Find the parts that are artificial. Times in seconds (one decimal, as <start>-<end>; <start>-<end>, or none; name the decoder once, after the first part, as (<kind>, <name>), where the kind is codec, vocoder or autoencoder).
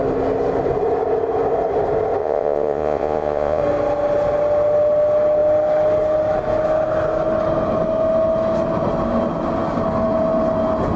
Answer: 2.2-3.6 (vocoder, Vocos)